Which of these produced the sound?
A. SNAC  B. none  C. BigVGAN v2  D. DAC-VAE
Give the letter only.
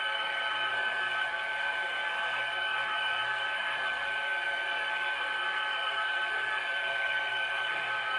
A